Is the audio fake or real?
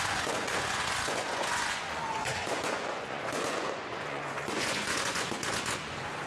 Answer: fake